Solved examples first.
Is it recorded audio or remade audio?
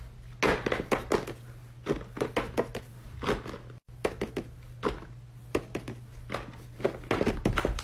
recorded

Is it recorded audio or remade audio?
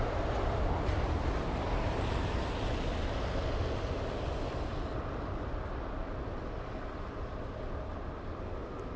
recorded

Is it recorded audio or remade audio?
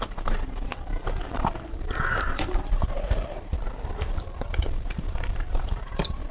remade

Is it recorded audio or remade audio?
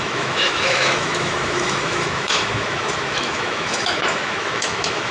remade